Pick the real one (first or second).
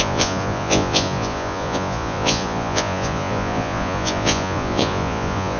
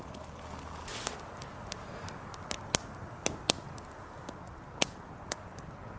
second